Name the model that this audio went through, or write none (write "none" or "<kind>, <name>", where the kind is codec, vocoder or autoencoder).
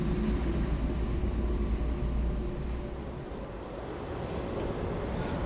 none